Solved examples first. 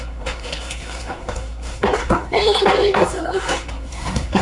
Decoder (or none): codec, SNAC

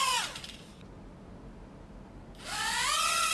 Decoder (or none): none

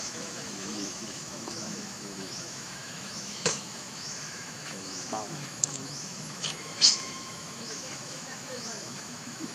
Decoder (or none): autoencoder, DAC-VAE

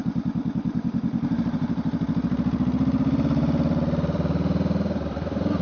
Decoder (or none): vocoder, BigVGAN v2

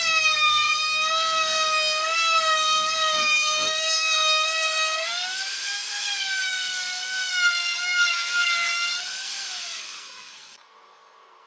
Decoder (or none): codec, SNAC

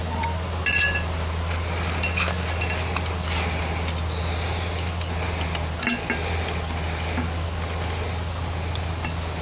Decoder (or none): none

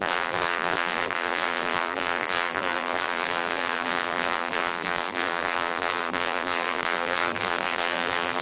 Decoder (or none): vocoder, BigVGAN v2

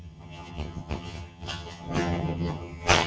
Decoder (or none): vocoder, HiFi-GAN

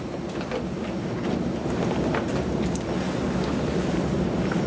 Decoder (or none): none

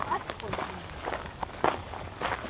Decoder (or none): codec, DAC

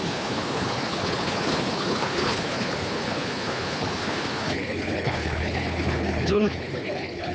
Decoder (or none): codec, HILCodec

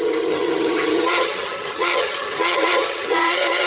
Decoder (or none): vocoder, HiFi-GAN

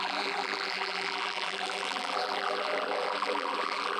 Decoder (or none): vocoder, BigVGAN v2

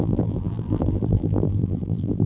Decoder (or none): vocoder, BigVGAN v2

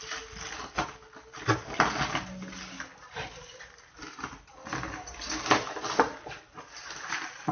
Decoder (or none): none